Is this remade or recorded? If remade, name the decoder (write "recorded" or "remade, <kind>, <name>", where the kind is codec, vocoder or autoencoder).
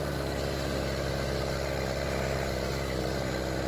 recorded